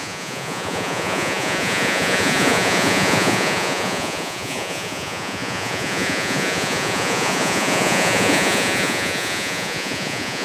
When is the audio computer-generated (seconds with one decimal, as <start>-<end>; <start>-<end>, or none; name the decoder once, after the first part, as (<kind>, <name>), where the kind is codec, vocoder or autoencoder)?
0.0-10.4 (vocoder, Vocos)